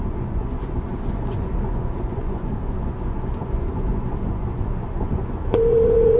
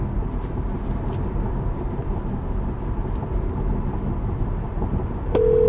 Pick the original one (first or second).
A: second